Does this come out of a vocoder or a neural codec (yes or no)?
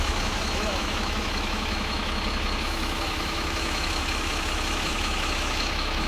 yes